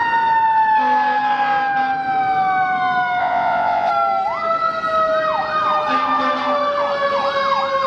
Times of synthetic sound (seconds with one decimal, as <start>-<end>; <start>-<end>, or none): 3.2-3.9